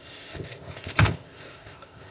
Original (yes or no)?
no